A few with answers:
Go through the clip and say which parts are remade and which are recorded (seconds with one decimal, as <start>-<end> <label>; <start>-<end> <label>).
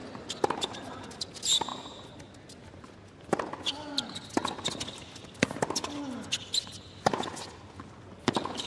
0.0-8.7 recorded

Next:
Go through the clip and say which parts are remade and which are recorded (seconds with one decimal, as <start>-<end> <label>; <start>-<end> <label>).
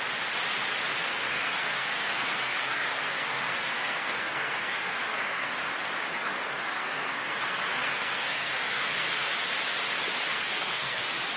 0.0-1.0 recorded; 1.0-5.5 remade; 5.5-6.1 recorded; 6.1-9.4 remade; 9.4-10.3 recorded; 10.3-11.0 remade; 11.0-11.4 recorded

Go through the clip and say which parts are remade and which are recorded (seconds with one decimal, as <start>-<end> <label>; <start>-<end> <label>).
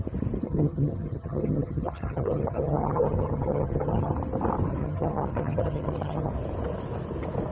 0.0-0.4 recorded; 0.4-4.1 remade; 4.1-4.8 recorded; 4.8-6.3 remade; 6.3-7.5 recorded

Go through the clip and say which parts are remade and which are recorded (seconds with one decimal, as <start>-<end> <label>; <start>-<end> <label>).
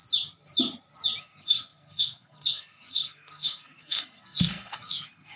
0.0-1.2 recorded; 1.2-5.4 remade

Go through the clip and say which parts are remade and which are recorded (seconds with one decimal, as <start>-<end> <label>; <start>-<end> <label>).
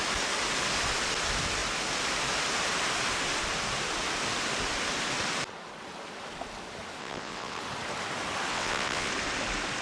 0.0-7.0 recorded; 7.0-7.6 remade; 7.6-8.5 recorded; 8.5-9.1 remade; 9.1-9.8 recorded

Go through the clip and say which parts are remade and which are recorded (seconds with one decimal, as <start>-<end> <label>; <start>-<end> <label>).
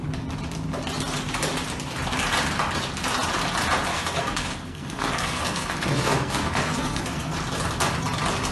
0.0-3.9 recorded; 3.9-7.4 remade; 7.4-8.5 recorded